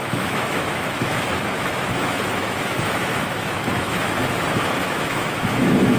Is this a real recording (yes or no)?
no